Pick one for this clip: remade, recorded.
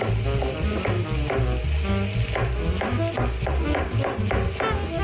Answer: recorded